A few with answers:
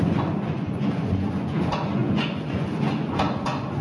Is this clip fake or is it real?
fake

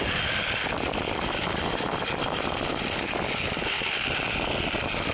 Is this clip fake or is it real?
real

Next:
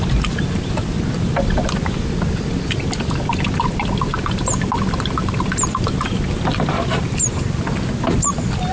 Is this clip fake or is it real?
real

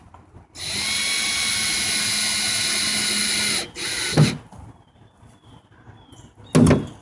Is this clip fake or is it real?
real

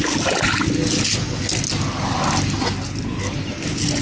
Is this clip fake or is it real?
real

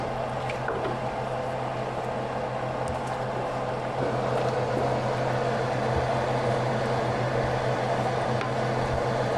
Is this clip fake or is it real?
real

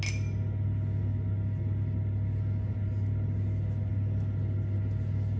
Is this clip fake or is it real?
real